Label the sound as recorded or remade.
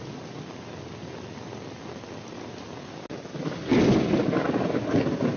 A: recorded